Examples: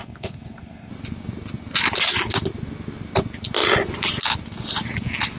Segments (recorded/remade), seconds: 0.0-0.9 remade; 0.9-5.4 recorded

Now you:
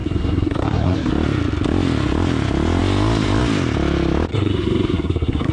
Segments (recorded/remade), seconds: 0.0-1.1 remade; 1.1-4.3 recorded; 4.3-5.5 remade

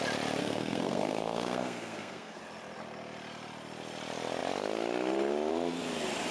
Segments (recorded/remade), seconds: 0.0-0.4 recorded; 0.4-2.4 remade; 2.4-6.3 recorded

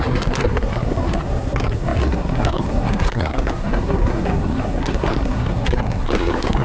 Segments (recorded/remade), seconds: 0.0-6.6 remade

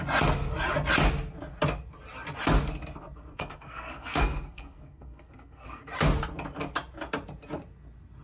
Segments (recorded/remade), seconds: 0.0-3.3 recorded; 3.3-5.8 remade; 5.8-8.2 recorded

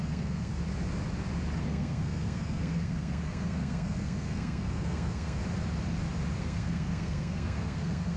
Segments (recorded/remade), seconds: 0.0-0.5 remade; 0.5-1.6 recorded; 1.6-5.4 remade; 5.4-6.4 recorded; 6.4-8.2 remade

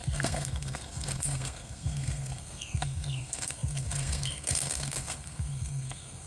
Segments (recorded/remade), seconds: 0.0-6.3 remade

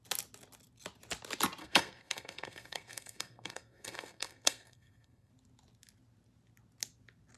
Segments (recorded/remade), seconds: 0.0-1.6 recorded; 1.6-5.3 remade; 5.3-7.4 recorded